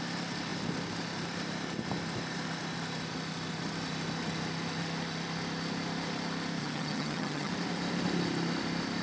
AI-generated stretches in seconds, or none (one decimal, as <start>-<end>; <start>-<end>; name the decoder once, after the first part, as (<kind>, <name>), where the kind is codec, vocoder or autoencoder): 6.6-7.5 (vocoder, HiFi-GAN)